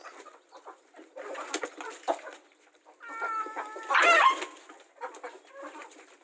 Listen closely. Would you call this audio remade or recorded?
recorded